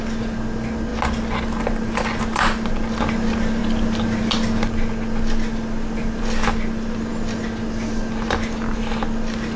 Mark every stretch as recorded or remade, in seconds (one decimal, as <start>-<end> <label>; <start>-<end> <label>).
0.0-9.6 recorded